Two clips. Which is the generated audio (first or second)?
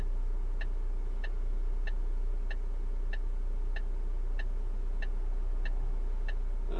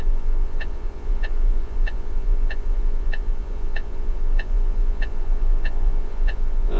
second